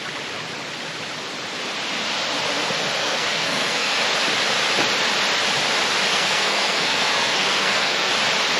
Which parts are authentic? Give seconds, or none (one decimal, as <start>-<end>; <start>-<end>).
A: 0.0-3.0; 4.0-6.1; 8.1-8.6